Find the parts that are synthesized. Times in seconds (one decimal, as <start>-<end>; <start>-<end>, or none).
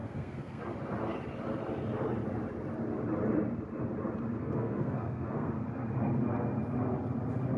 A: 0.0-0.6; 4.4-5.5